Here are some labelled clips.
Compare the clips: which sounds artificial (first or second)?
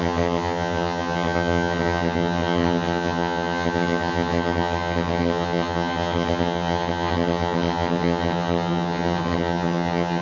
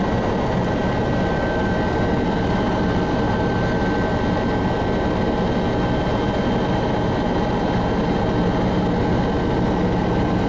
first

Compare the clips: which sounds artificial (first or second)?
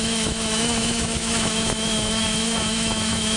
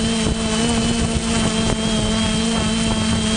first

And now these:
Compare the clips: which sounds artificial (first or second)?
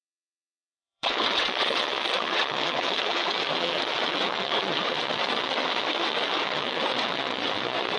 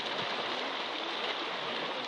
first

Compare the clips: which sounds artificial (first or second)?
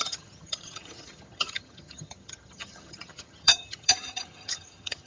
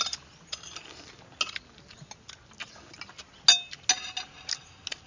first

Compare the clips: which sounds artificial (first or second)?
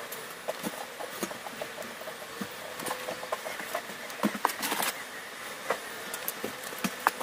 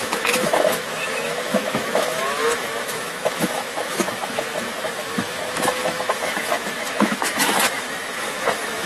second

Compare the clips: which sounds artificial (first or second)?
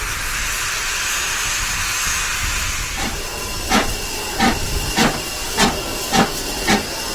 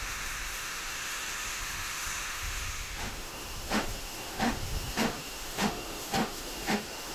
second